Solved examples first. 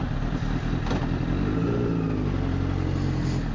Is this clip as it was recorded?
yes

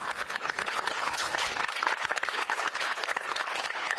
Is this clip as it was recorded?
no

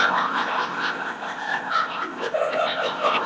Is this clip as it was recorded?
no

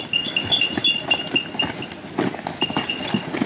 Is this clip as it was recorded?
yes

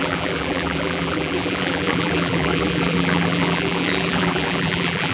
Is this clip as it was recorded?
no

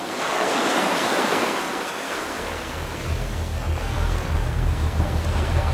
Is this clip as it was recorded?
no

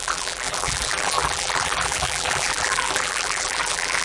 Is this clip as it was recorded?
no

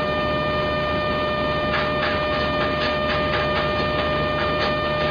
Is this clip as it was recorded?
no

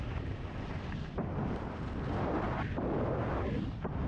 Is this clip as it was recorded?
yes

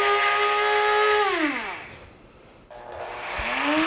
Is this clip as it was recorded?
yes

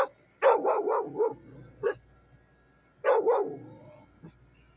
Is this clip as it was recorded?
yes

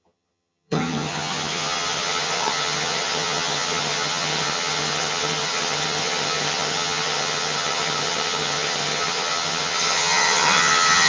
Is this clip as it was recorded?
no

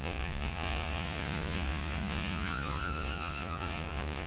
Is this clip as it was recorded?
no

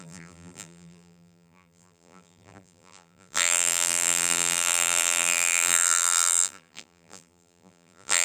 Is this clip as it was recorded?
no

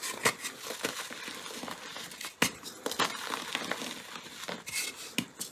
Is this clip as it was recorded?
yes